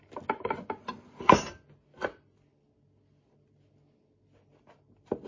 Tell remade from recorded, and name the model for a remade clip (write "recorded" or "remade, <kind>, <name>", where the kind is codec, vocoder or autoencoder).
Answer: recorded